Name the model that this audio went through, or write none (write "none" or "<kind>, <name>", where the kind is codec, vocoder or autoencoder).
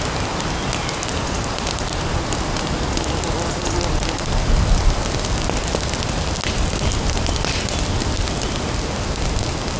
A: none